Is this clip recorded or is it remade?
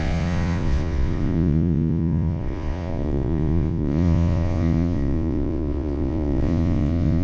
remade